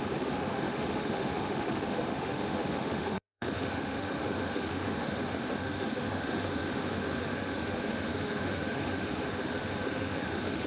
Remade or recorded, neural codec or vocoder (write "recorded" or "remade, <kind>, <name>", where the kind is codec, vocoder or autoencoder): remade, autoencoder, DAC-VAE